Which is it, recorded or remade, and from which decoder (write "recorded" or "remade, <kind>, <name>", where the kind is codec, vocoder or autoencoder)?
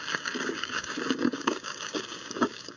remade, codec, DAC